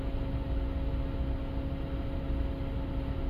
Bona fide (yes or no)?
yes